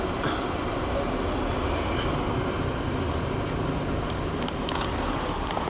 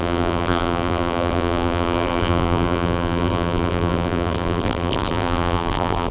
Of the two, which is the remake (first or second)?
second